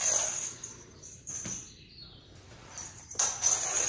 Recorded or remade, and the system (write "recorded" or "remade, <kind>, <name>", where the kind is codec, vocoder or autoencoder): recorded